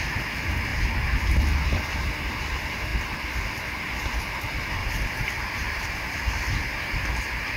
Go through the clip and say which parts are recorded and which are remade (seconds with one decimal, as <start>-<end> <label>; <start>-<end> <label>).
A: 0.0-4.8 recorded; 4.8-6.5 remade; 6.5-7.6 recorded